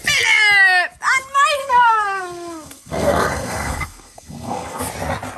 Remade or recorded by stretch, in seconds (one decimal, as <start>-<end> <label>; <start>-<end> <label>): 0.0-1.6 recorded; 1.6-4.8 remade; 4.8-5.4 recorded